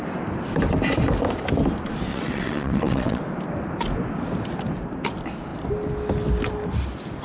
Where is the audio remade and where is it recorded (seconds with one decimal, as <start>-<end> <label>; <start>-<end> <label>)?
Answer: 0.0-2.1 recorded; 2.1-3.2 remade; 3.2-7.2 recorded